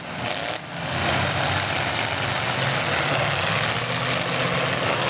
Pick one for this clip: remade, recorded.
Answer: recorded